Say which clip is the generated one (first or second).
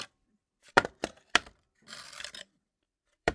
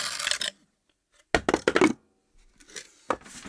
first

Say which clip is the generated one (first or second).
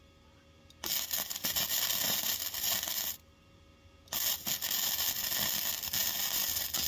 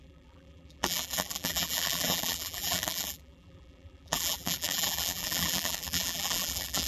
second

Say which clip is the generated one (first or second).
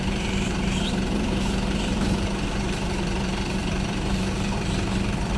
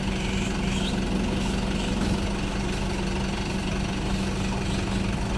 first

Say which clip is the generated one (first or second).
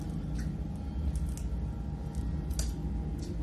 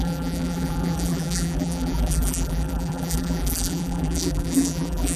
second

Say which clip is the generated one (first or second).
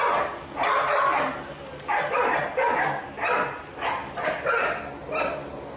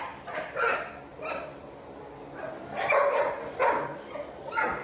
second